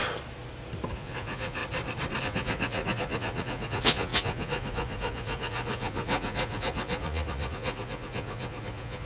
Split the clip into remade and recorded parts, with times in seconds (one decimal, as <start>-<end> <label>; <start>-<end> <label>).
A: 0.0-0.9 recorded; 0.9-1.6 remade; 1.6-2.2 recorded; 2.2-9.1 remade

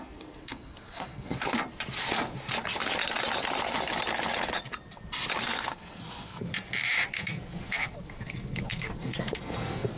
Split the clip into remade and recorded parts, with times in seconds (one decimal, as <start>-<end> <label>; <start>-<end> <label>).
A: 0.0-1.3 remade; 1.3-5.4 recorded; 5.4-6.5 remade; 6.5-7.1 recorded; 7.1-10.0 remade

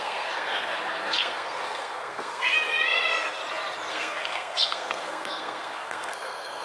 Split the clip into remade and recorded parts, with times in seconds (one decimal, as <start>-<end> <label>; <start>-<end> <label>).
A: 0.0-3.4 remade; 3.4-3.9 recorded; 3.9-6.6 remade

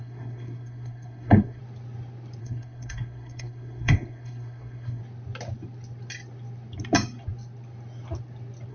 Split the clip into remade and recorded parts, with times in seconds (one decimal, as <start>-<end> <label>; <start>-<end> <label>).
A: 0.0-1.6 remade; 1.6-2.4 recorded; 2.4-5.0 remade; 5.0-8.7 recorded

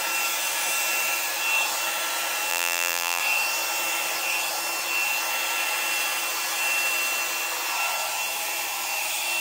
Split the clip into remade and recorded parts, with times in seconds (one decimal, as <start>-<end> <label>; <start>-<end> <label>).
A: 0.0-2.5 recorded; 2.5-3.2 remade; 3.2-9.4 recorded

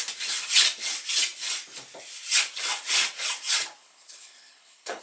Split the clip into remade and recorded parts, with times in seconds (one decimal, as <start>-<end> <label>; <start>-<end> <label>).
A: 0.0-3.8 recorded; 3.8-5.0 remade

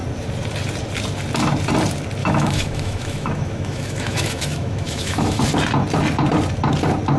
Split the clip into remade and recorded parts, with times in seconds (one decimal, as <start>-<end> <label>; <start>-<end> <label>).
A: 0.0-2.2 recorded; 2.2-5.4 remade; 5.4-7.2 recorded